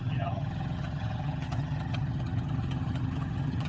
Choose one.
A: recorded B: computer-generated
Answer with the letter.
B